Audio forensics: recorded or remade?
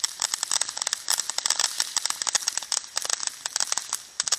recorded